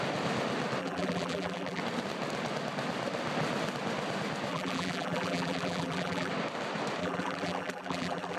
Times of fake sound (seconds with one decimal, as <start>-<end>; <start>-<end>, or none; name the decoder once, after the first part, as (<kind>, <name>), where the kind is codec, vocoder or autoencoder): 0.8-1.8 (vocoder, BigVGAN v2); 4.5-6.3; 7.0-8.4